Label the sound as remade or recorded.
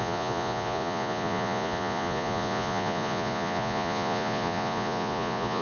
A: remade